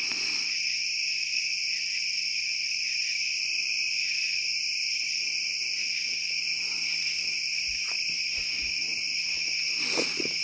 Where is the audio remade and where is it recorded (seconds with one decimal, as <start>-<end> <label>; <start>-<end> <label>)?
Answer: 0.0-1.4 remade; 1.4-2.5 recorded; 2.5-8.9 remade; 8.9-10.4 recorded